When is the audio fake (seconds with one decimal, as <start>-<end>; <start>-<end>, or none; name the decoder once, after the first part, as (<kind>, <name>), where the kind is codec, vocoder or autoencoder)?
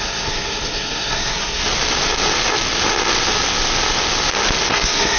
0.0-1.6 (codec, SNAC); 4.7-5.2